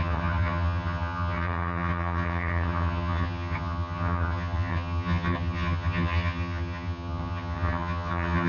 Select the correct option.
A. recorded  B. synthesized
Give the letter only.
B